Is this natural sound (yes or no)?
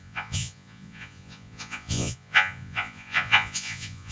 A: no